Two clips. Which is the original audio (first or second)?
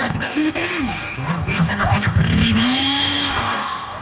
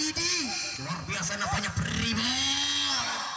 second